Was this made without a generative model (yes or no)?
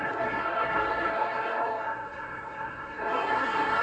no